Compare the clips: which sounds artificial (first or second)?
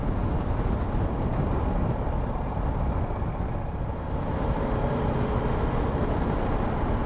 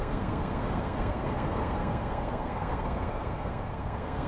second